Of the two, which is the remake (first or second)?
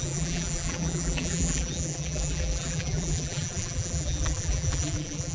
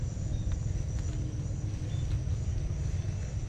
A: first